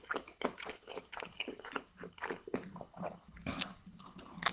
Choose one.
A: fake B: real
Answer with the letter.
A